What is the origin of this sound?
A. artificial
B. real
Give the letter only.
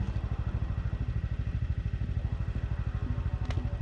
B